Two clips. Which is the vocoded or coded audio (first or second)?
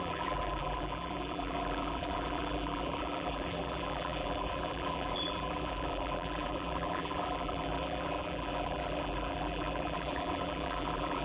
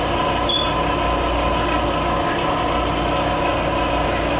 first